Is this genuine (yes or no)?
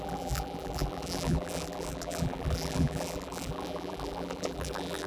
no